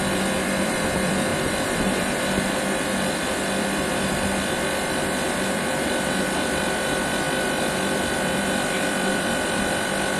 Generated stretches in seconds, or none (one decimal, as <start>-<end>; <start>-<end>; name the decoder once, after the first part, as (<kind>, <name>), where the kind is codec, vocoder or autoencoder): 0.0-10.2 (vocoder, BigVGAN v2)